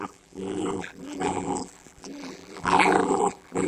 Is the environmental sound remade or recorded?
remade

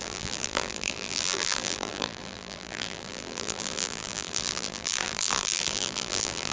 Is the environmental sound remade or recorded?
remade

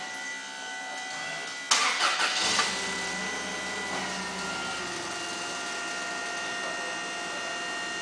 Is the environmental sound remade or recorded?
recorded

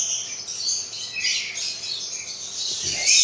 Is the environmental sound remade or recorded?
recorded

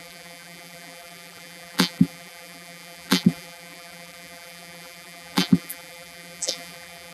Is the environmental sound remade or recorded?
remade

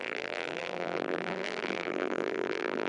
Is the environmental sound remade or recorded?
remade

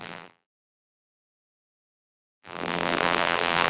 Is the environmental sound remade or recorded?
remade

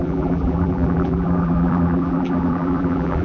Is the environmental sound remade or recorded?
remade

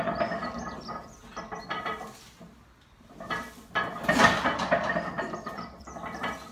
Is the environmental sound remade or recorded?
remade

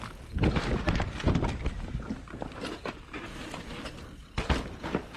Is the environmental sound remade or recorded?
recorded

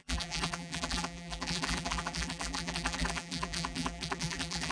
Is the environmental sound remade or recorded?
remade